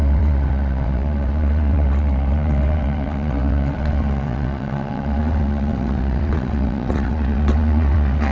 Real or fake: fake